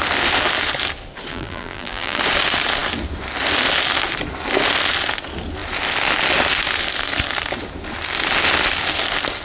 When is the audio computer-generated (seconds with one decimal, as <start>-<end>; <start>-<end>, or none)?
1.3-2.2

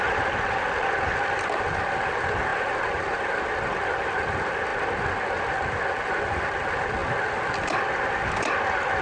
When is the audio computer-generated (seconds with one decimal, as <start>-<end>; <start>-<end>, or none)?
none